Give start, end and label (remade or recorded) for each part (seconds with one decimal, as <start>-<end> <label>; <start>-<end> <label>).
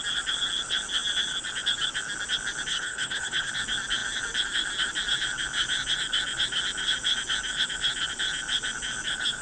0.0-2.7 recorded; 2.7-3.5 remade; 3.5-9.4 recorded